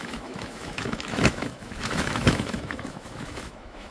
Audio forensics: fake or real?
fake